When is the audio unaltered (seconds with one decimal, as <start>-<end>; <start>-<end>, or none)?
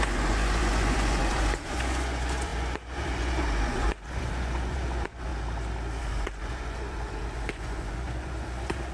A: 5.3-6.0